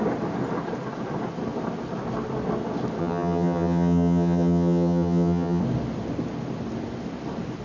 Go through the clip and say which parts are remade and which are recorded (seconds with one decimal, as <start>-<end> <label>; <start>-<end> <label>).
0.0-3.0 recorded; 3.0-5.6 remade; 5.6-7.6 recorded